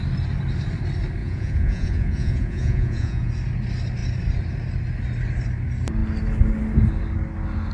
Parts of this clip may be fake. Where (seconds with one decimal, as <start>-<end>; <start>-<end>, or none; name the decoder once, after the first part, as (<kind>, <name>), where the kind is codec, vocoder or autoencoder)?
1.2-3.3 (vocoder, Vocos)